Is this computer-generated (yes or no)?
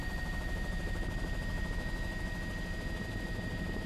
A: no